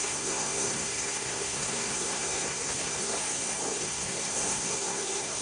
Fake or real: fake